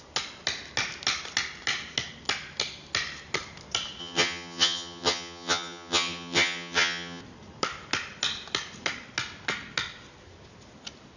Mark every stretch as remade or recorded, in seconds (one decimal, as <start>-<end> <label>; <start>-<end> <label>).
0.0-4.0 recorded; 4.0-7.2 remade; 7.2-11.2 recorded